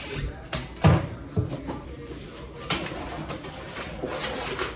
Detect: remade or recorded recorded